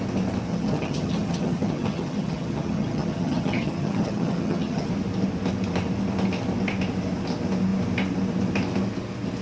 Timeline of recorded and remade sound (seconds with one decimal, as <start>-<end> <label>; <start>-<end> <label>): 0.0-0.5 recorded; 0.5-4.9 remade; 4.9-9.4 recorded